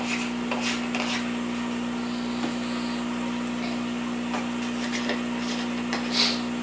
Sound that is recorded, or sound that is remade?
recorded